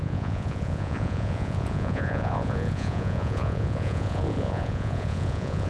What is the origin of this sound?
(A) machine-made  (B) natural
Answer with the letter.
A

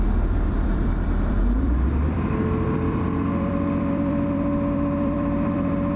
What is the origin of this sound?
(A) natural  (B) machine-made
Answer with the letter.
B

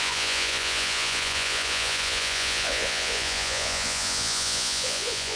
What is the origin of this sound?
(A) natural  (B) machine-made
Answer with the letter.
B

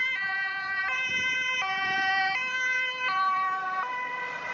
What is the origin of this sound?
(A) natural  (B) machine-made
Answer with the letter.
B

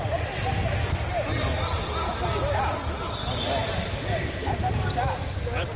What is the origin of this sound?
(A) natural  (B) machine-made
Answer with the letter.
A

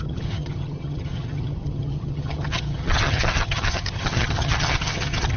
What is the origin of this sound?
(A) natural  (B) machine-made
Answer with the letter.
B